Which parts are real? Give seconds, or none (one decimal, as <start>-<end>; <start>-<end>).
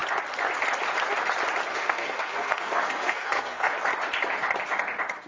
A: 0.0-1.7; 3.7-5.3